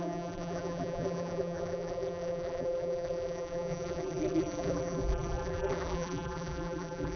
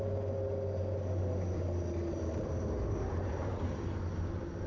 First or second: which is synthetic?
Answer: first